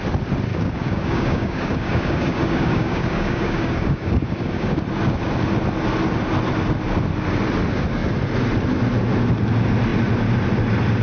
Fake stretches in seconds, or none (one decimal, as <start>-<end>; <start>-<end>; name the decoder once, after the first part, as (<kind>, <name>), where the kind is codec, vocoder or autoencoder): 0.5-4.8 (codec, DAC)